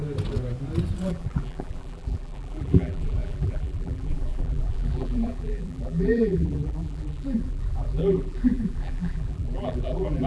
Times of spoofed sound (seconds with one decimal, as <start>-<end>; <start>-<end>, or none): 1.1-10.3